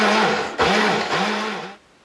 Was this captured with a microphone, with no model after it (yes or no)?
yes